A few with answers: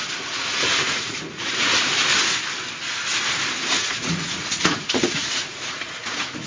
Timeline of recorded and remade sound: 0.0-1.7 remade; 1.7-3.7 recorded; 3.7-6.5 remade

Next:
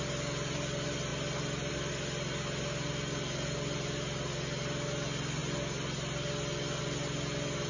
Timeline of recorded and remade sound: 0.0-7.7 recorded

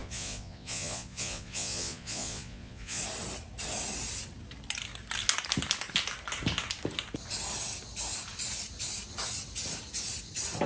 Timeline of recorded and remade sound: 0.0-3.0 remade; 3.0-10.7 recorded